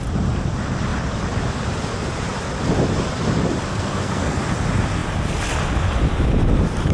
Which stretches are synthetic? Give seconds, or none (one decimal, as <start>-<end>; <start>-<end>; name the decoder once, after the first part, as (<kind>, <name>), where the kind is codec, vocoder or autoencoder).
3.7-4.4 (codec, SNAC)